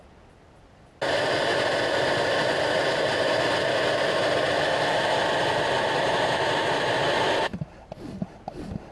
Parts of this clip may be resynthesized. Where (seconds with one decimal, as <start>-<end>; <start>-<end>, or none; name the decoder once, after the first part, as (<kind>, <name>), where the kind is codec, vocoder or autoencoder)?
none